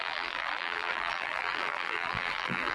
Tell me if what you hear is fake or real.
fake